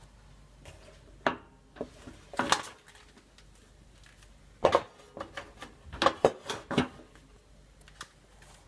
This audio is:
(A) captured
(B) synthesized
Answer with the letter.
A